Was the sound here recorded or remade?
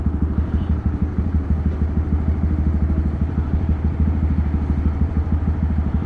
recorded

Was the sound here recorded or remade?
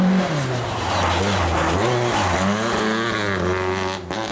recorded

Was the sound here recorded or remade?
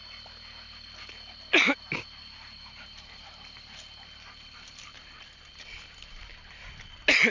recorded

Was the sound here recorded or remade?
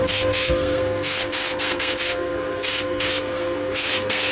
remade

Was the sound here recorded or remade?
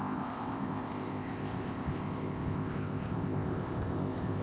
remade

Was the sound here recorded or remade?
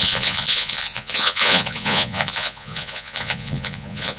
remade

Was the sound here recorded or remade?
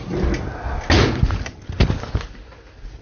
recorded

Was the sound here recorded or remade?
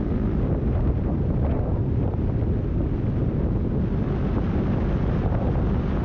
recorded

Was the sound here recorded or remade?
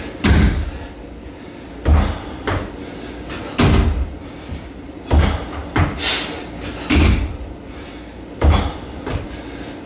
recorded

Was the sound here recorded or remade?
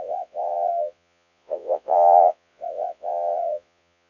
remade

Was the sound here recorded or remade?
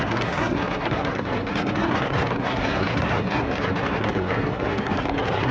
remade